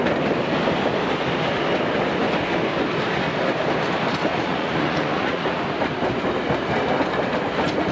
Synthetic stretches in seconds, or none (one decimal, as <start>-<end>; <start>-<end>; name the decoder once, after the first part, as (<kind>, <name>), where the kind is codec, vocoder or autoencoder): 4.3-5.6 (vocoder, Vocos)